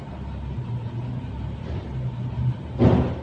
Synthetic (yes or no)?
no